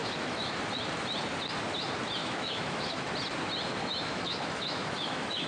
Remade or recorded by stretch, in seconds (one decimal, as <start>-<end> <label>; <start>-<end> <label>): 0.0-0.6 remade; 0.6-2.2 recorded; 2.2-3.1 remade; 3.1-3.8 recorded; 3.8-5.5 remade